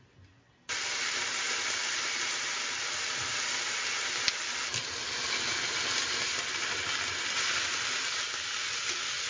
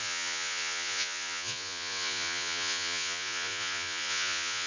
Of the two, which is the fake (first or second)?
second